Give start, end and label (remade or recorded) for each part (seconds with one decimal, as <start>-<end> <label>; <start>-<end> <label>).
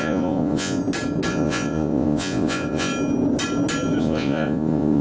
0.0-0.8 remade; 0.8-1.3 recorded; 1.3-2.9 remade; 2.9-4.0 recorded; 4.0-5.0 remade